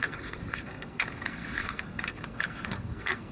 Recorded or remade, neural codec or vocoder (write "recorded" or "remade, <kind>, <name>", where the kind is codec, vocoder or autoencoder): remade, codec, SNAC